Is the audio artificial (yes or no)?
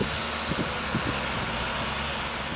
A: no